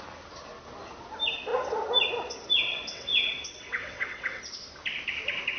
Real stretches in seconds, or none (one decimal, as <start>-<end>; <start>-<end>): 0.0-2.7; 4.4-5.6